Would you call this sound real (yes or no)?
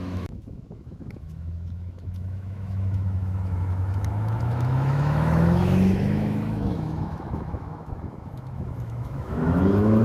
no